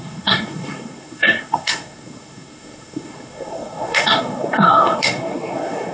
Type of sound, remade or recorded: remade